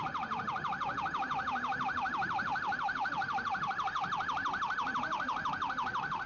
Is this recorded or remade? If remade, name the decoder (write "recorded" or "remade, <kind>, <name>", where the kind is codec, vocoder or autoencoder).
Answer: remade, vocoder, BigVGAN v2